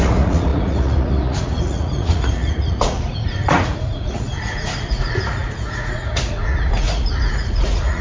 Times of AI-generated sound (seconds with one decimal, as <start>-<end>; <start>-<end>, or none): 0.0-8.0